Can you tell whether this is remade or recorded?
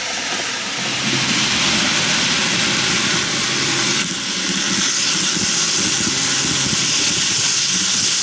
recorded